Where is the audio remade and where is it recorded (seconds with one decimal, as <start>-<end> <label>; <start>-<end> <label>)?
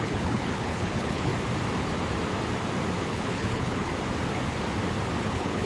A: 0.0-1.3 remade; 1.3-3.0 recorded; 3.0-3.9 remade; 3.9-5.2 recorded; 5.2-5.7 remade